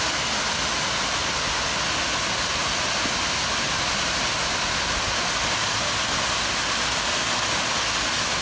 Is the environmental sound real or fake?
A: real